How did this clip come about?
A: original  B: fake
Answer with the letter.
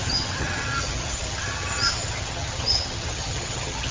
B